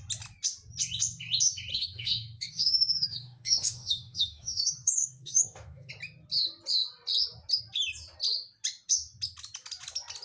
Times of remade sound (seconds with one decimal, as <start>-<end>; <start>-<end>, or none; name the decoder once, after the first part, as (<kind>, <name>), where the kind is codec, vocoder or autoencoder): 1.7-5.9 (autoencoder, DAC-VAE)